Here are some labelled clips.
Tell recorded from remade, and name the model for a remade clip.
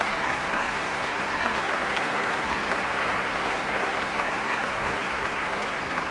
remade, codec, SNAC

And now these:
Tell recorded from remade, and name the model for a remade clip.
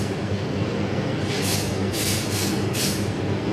remade, codec, SNAC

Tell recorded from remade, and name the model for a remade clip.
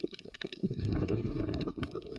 remade, codec, SNAC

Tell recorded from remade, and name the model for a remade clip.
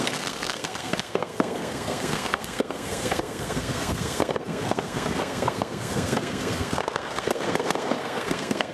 remade, codec, SNAC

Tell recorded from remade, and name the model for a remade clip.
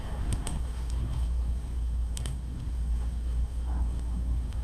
remade, codec, SNAC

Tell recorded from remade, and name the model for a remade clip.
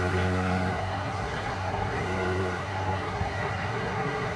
remade, codec, SNAC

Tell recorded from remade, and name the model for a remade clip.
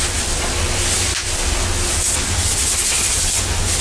recorded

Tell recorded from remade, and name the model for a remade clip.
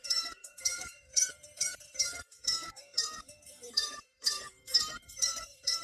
remade, codec, SNAC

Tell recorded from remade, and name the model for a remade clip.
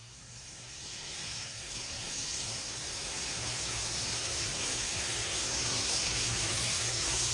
remade, codec, SNAC